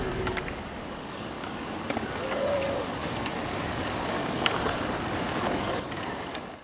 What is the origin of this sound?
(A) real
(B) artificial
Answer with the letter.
B